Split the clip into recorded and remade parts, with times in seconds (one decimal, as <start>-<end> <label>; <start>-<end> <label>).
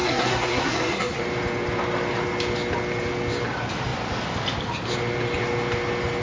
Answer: 0.0-1.2 remade; 1.2-6.2 recorded